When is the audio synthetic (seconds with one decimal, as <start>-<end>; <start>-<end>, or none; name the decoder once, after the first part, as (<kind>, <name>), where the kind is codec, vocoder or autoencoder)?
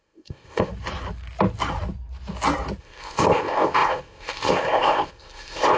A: 0.0-0.7 (codec, ZipCodec); 2.8-5.8